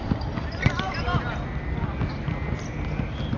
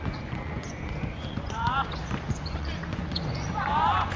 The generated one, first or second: second